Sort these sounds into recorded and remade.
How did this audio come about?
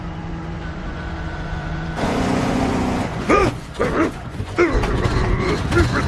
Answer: remade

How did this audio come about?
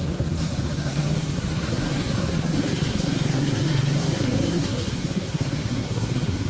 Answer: remade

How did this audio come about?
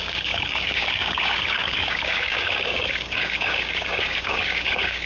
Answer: remade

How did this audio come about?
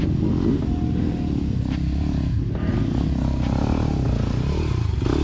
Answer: recorded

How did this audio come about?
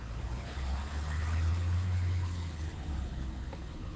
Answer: remade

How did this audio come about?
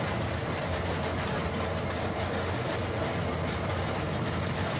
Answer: recorded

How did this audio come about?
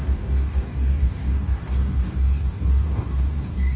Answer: remade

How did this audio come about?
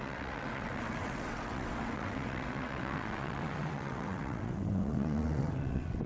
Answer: remade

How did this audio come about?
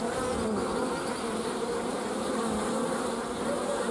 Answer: recorded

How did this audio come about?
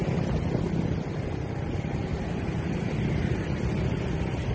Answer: recorded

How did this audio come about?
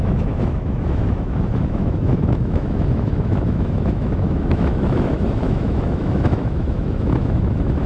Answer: remade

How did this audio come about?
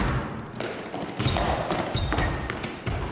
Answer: recorded